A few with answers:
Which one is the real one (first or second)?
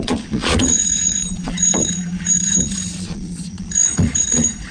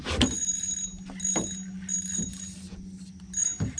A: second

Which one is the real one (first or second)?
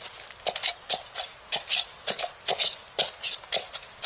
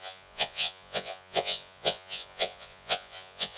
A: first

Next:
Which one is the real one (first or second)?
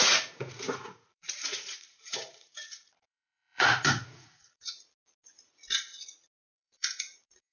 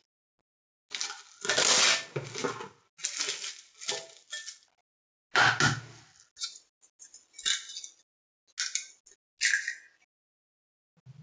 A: second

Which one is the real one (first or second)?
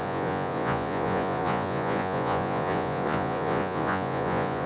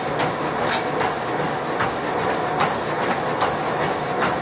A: second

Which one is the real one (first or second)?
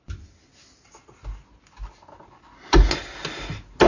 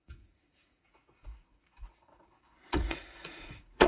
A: first